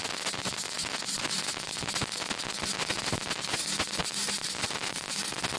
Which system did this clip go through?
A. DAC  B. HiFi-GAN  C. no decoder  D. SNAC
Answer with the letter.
C